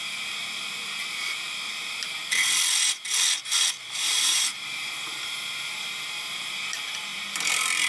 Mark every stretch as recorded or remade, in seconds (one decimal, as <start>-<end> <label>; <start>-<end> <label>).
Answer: 0.0-2.2 remade; 2.2-3.8 recorded; 3.8-7.9 remade